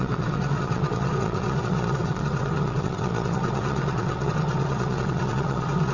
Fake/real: fake